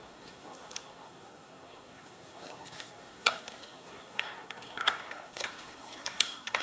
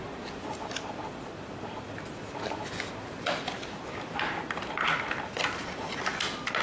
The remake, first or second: first